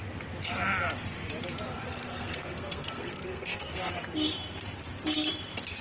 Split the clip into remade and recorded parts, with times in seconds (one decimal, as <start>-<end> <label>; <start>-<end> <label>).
0.0-2.1 recorded; 2.1-3.9 remade; 3.9-5.8 recorded